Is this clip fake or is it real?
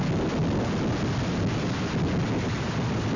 real